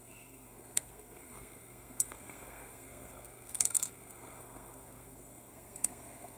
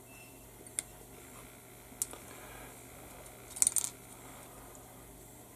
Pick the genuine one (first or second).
second